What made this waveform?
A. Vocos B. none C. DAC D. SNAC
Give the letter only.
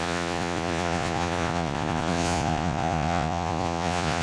A